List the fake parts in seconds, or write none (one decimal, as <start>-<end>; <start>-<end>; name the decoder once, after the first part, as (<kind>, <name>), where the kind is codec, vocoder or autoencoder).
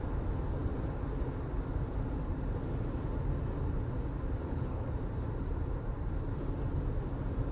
4.4-4.9 (codec, HILCodec)